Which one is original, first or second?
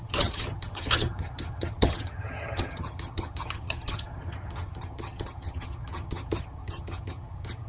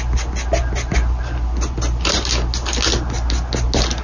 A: second